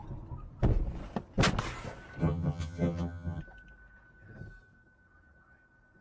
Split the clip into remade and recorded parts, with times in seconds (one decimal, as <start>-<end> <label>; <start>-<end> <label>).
0.0-2.2 recorded; 2.2-3.4 remade; 3.4-6.0 recorded